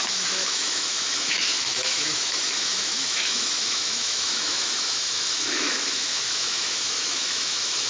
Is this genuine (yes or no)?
no